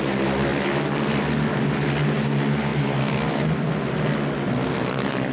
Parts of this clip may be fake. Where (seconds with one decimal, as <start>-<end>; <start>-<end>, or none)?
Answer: none